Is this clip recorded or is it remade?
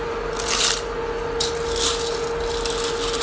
recorded